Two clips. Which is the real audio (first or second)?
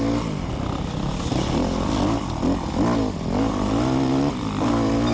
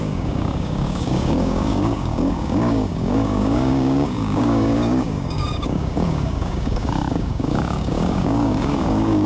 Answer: first